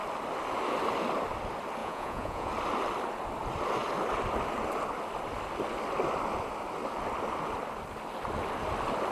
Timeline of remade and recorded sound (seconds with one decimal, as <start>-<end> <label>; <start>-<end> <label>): 0.0-1.8 recorded; 1.8-2.5 remade; 2.5-9.1 recorded

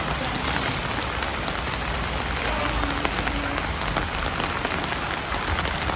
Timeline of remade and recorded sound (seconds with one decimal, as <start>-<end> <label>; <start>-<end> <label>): 0.0-1.3 recorded; 1.3-2.4 remade; 2.4-4.1 recorded; 4.1-4.7 remade; 4.7-6.0 recorded